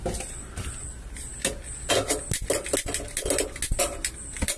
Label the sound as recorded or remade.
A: recorded